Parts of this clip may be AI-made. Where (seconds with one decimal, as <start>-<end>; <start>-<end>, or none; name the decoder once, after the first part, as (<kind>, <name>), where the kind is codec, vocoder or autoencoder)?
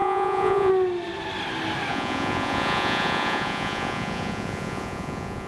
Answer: 0.0-0.7 (vocoder, Vocos); 1.9-5.5